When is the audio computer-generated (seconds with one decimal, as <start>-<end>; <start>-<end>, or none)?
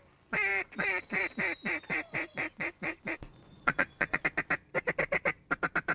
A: 0.5-1.2; 1.6-4.2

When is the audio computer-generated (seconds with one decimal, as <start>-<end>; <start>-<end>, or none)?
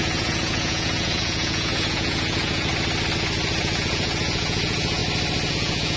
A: 0.0-2.7; 3.6-5.0; 5.5-6.0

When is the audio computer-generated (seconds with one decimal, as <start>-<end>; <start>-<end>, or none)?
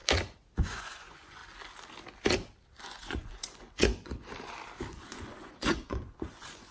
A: 0.6-1.4; 2.8-4.1; 4.9-6.7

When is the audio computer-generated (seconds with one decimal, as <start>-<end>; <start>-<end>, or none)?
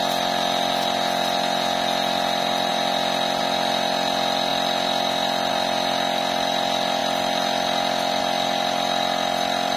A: none